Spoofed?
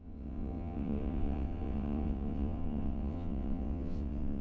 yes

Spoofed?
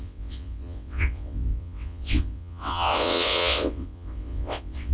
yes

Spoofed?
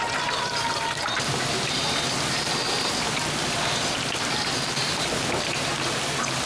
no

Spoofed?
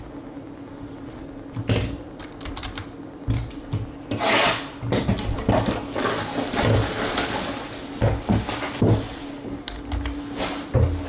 no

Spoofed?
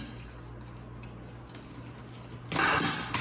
no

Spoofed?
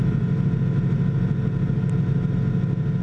no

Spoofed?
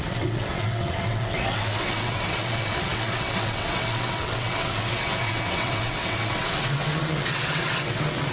yes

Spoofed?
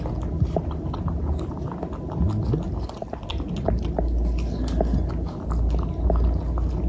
no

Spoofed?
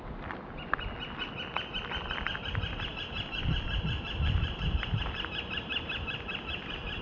no